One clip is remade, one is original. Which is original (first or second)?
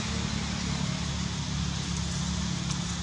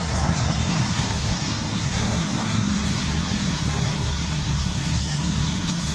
first